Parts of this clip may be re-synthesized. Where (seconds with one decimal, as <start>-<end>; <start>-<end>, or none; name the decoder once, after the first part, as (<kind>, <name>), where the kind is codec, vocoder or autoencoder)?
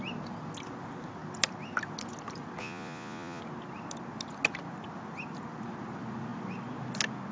2.6-3.4 (vocoder, Vocos)